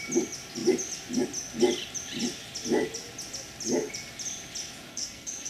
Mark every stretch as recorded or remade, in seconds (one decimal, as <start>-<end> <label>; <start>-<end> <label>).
0.0-4.9 recorded; 4.9-5.5 remade